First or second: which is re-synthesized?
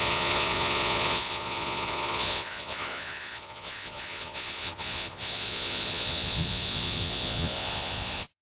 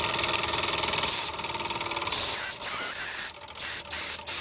first